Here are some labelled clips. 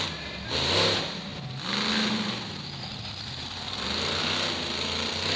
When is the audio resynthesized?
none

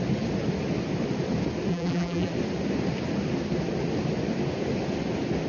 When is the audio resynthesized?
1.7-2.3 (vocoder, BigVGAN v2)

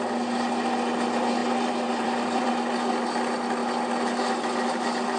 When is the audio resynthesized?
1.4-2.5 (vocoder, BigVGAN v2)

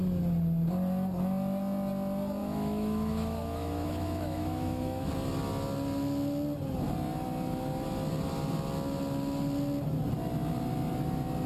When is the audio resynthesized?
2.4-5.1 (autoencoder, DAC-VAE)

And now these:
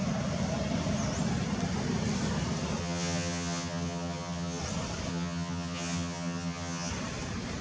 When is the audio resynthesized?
2.8-4.6 (vocoder, HiFi-GAN); 5.1-6.9

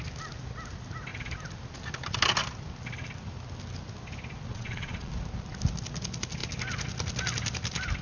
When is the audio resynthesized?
4.5-5.1 (vocoder, Vocos)

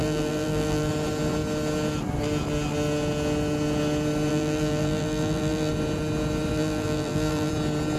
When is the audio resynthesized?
0.0-0.9 (vocoder, BigVGAN v2); 4.3-5.7; 6.5-7.5